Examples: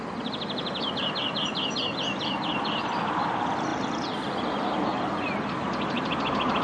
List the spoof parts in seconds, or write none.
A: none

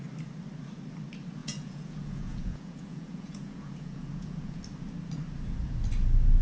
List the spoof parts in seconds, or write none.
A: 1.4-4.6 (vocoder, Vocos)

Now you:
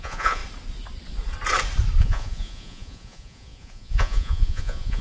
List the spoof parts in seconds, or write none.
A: 0.0-0.4 (vocoder, Vocos); 2.0-5.0

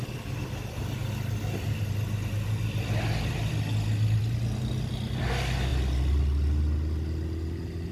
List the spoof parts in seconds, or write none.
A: none